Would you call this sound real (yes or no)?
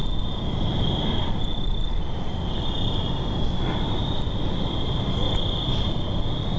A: yes